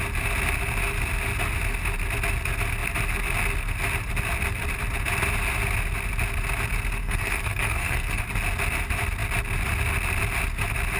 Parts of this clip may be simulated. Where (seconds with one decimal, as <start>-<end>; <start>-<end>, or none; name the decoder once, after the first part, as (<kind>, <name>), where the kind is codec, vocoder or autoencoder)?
7.0-8.2 (codec, SNAC)